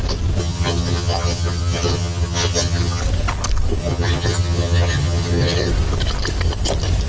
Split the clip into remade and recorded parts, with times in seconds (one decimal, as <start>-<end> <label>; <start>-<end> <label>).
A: 0.0-0.4 recorded; 0.4-3.0 remade; 3.0-3.8 recorded; 3.8-5.7 remade; 5.7-7.1 recorded

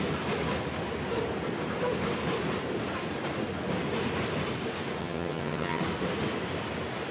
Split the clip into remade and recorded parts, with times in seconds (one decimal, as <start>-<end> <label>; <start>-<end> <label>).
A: 0.0-5.0 recorded; 5.0-5.8 remade; 5.8-7.1 recorded